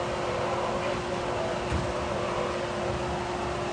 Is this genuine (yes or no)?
yes